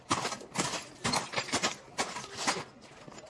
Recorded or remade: recorded